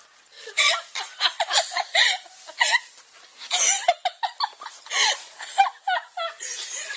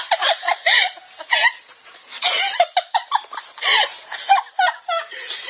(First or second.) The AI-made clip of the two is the second